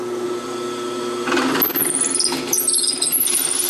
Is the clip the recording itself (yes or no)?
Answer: yes